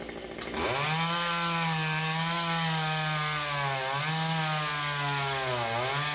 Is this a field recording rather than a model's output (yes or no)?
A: yes